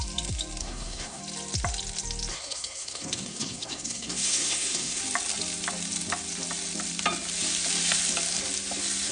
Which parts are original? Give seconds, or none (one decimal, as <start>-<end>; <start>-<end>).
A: 0.0-0.6; 1.2-2.3; 5.0-9.1